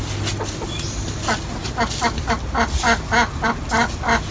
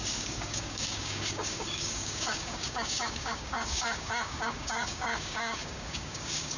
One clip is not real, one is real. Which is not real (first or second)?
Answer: second